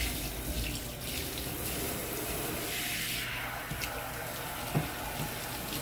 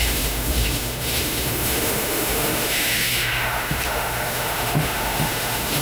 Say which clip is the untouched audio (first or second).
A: first